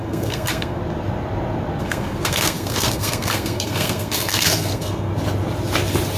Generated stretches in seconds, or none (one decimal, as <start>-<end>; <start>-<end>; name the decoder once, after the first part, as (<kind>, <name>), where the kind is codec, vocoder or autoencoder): 0.0-0.8 (codec, SNAC); 1.8-5.1